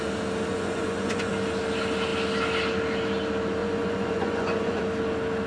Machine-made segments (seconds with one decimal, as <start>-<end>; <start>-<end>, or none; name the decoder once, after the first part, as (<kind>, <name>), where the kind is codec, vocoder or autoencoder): 0.5-1.3 (vocoder, Vocos); 3.6-4.8